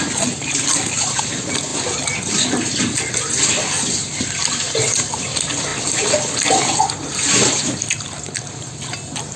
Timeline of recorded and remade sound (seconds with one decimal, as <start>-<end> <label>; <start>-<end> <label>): 0.0-9.4 recorded